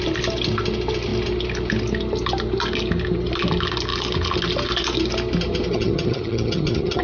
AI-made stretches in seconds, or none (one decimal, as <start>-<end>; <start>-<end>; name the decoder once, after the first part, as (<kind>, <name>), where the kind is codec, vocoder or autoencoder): 5.7-7.0 (vocoder, HiFi-GAN)

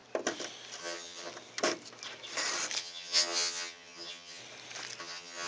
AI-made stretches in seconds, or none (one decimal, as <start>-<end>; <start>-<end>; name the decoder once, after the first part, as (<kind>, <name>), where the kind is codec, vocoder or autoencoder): 0.8-1.3 (vocoder, HiFi-GAN); 2.8-4.4; 5.0-5.5

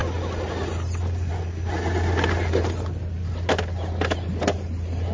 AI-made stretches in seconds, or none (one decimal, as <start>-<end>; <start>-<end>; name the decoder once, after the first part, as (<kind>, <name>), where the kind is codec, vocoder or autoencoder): none

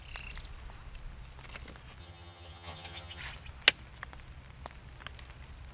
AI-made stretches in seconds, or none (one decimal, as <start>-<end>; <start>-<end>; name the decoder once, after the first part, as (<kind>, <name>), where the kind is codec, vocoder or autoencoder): 2.0-3.2 (vocoder, HiFi-GAN)

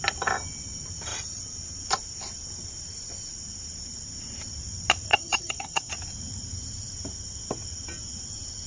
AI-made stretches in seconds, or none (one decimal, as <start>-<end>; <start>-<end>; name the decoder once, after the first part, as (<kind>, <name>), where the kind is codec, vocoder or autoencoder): 5.1-5.9 (vocoder, HiFi-GAN)

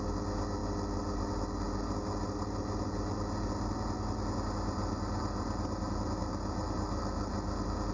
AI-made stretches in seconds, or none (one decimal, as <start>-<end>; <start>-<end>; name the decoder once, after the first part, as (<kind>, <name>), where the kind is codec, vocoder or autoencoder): none

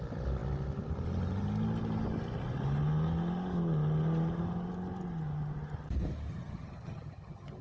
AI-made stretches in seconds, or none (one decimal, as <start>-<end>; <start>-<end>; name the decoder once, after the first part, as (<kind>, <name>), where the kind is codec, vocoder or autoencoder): 6.3-7.6 (vocoder, HiFi-GAN)

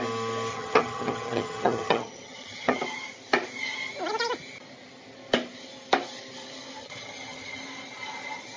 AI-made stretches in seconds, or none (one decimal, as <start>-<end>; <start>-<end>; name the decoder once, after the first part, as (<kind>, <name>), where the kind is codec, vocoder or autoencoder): 0.5-2.8 (vocoder, HiFi-GAN); 6.8-7.6